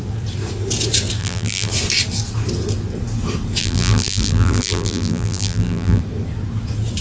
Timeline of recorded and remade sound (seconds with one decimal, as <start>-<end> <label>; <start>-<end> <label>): 0.0-1.2 recorded; 1.2-1.7 remade; 1.7-3.6 recorded; 3.6-6.0 remade; 6.0-7.0 recorded